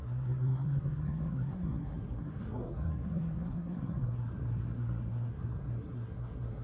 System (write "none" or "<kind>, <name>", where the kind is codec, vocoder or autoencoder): codec, SNAC